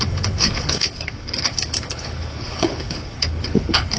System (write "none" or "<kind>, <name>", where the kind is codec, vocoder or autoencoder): codec, HILCodec